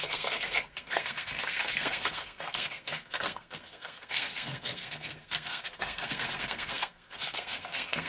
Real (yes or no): no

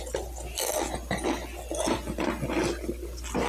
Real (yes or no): yes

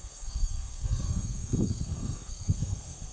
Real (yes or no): no